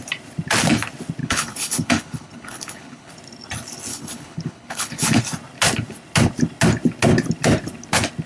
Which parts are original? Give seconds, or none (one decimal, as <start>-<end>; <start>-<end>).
0.0-1.2; 3.1-3.9; 5.2-8.3